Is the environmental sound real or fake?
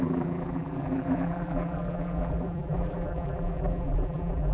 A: fake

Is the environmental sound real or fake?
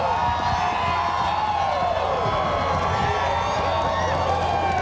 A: real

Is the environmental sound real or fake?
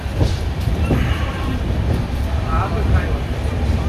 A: fake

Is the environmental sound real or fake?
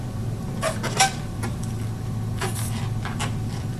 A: fake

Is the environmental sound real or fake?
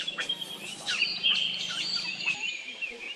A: fake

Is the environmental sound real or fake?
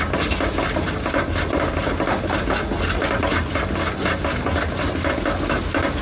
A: real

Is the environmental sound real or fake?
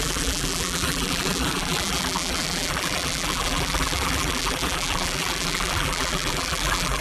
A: fake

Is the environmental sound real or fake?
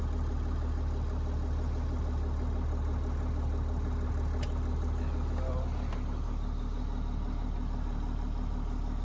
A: real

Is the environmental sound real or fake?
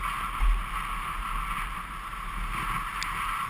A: real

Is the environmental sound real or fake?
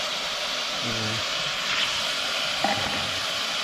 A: real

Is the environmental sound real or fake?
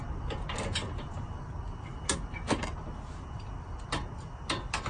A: real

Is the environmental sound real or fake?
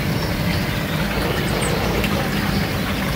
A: real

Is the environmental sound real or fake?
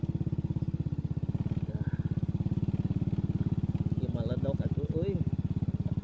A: real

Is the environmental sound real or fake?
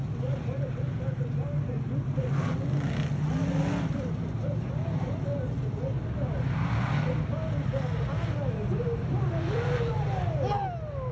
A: real